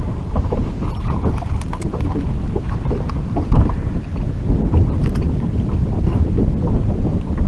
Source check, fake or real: real